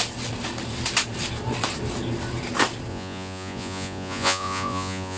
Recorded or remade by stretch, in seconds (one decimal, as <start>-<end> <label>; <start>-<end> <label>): 0.0-2.9 recorded; 2.9-5.2 remade